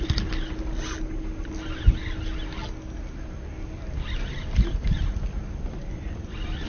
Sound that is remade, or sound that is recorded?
recorded